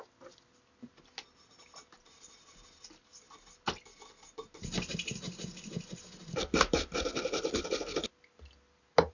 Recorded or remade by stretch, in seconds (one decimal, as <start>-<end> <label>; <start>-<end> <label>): 0.0-9.1 recorded